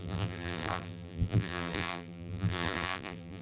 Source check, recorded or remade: remade